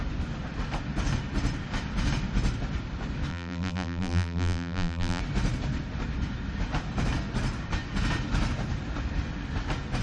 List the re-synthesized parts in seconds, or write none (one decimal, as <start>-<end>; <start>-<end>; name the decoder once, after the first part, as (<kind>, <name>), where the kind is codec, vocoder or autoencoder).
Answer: 3.3-5.2 (vocoder, BigVGAN v2)